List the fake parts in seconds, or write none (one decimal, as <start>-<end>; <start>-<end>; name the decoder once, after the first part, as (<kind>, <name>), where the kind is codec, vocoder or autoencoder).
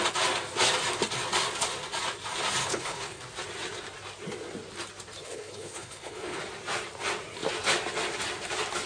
2.6-3.2 (codec, HILCodec); 5.2-6.4